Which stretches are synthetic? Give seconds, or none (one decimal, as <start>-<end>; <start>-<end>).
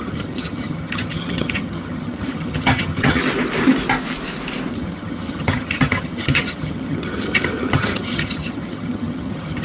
0.0-3.2; 4.7-9.6